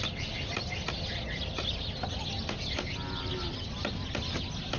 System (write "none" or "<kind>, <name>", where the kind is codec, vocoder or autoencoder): none